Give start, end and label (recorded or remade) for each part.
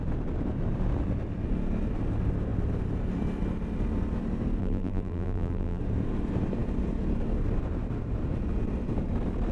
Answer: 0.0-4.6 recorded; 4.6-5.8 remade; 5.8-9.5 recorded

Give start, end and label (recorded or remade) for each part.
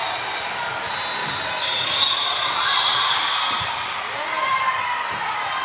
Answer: 0.0-1.2 recorded; 1.2-4.6 remade; 4.6-5.6 recorded